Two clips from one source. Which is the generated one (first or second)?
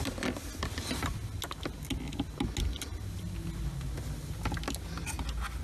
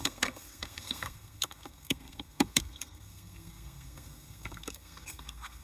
second